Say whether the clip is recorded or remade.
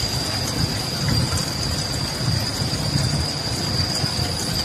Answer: recorded